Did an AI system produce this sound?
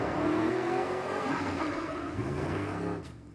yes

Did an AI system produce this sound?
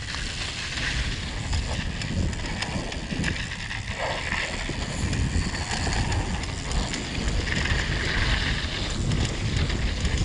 no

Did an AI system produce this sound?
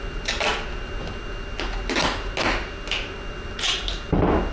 no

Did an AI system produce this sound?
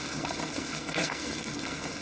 yes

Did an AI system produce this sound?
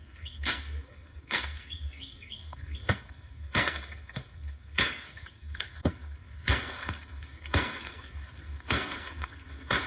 yes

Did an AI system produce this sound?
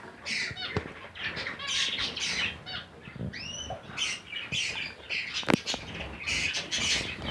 no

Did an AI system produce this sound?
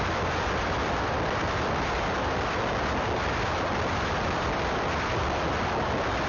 no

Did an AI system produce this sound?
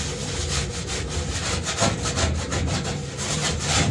no